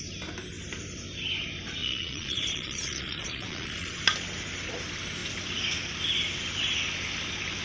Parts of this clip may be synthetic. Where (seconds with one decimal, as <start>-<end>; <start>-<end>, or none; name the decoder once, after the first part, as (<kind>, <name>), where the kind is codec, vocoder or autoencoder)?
1.8-4.0 (vocoder, Vocos)